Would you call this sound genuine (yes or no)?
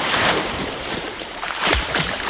no